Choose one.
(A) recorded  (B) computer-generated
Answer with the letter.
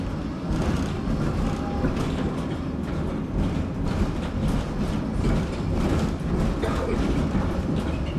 A